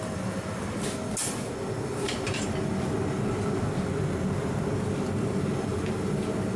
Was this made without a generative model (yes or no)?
yes